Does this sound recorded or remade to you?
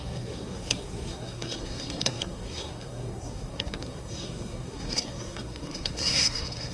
remade